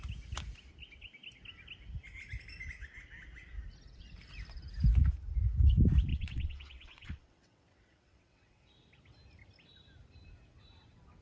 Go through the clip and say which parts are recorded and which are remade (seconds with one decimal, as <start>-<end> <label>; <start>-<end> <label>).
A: 0.0-6.1 recorded; 6.1-8.7 remade; 8.7-11.2 recorded